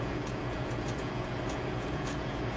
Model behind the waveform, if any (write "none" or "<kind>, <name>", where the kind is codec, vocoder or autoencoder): vocoder, Vocos